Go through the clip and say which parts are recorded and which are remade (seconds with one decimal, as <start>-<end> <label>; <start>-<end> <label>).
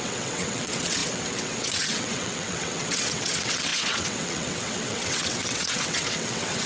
0.0-6.7 remade